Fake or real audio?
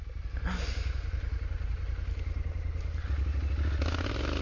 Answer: real